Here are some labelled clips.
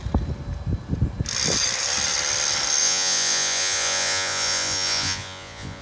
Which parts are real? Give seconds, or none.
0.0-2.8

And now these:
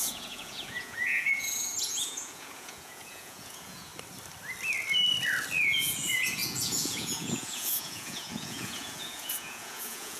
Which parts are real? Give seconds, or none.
3.9-5.6